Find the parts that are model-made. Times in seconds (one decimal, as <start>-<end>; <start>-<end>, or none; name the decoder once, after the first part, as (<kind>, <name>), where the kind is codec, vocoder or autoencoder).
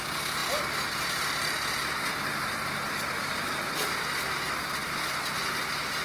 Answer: none